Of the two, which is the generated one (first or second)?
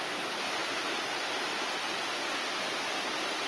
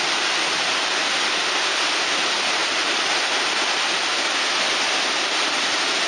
second